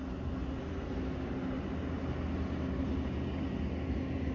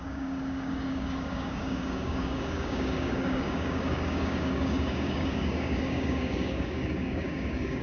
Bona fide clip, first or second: first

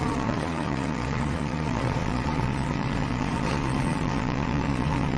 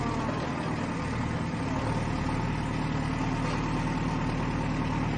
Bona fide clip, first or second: second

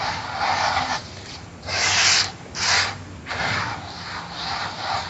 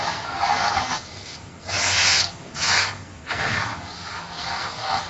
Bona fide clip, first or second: first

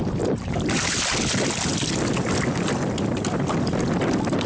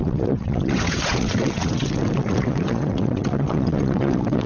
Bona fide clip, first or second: first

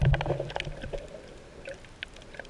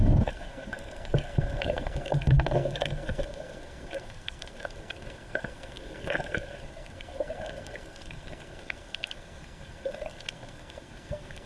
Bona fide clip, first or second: first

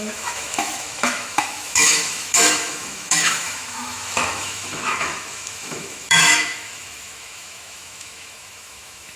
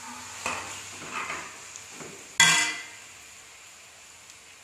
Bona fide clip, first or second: second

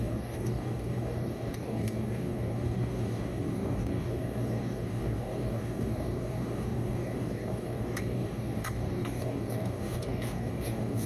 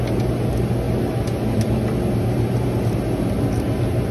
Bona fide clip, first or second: second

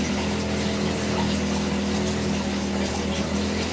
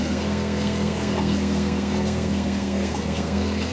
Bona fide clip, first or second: first